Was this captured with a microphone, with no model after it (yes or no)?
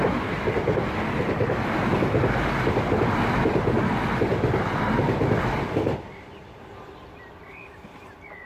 yes